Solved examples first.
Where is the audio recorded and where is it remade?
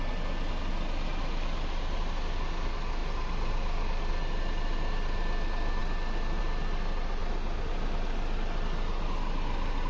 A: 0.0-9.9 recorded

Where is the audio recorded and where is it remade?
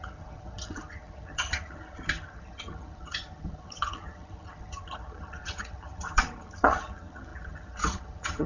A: 0.0-8.5 remade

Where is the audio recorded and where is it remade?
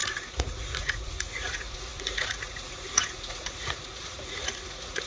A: 0.0-5.1 remade